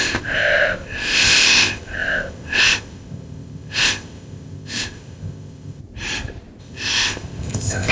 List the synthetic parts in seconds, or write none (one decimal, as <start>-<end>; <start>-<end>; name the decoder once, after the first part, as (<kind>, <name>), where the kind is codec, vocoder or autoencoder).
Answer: 0.0-5.8 (codec, ZipCodec); 6.6-7.9

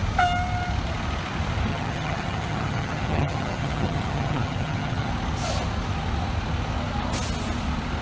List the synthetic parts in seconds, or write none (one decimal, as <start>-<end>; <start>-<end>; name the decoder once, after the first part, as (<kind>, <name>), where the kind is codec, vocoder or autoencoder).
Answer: 1.7-5.1 (vocoder, HiFi-GAN)

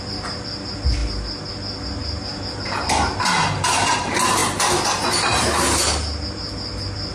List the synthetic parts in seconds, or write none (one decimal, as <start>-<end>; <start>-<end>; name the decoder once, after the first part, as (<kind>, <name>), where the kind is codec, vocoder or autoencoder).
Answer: none

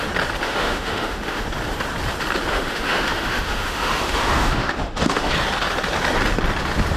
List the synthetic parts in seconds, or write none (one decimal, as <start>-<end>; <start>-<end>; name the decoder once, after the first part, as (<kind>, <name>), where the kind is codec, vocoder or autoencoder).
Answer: 0.4-1.4 (autoencoder, DAC-VAE); 2.5-5.3

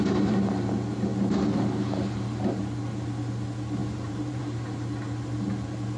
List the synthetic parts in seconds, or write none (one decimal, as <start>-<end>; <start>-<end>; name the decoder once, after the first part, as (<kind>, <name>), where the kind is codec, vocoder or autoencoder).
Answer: 3.8-4.4 (vocoder, BigVGAN v2)

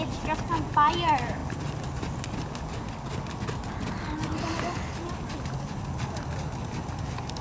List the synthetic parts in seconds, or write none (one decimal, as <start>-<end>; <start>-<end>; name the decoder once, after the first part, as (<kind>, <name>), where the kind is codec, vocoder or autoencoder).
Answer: none

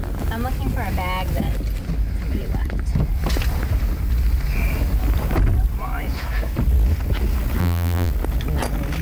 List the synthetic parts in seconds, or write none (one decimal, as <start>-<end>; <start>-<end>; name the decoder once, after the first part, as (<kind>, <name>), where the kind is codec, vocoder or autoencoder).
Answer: 7.6-8.1 (vocoder, BigVGAN v2)

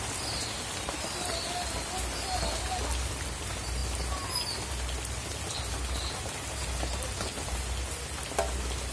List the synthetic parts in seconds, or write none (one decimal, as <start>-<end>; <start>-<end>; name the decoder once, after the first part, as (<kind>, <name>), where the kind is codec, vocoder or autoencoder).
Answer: none